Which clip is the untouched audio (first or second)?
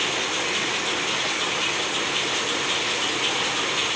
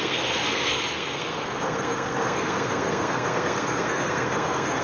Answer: first